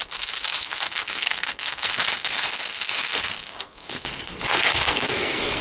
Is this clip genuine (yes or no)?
no